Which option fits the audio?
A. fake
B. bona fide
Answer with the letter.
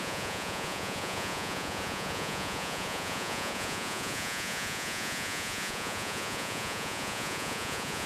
A